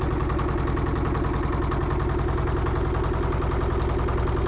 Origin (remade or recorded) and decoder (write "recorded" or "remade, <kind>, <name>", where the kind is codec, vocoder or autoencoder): recorded